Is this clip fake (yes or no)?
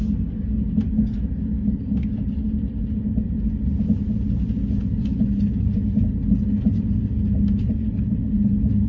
no